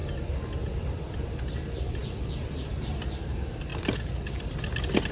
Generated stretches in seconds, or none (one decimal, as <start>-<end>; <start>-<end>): none